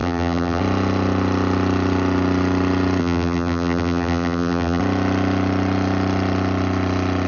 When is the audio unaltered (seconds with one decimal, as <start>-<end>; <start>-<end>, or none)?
0.6-3.0; 4.8-7.3